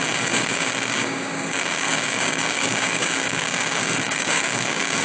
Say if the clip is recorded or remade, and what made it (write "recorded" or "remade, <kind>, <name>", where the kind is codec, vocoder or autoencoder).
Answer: remade, codec, DAC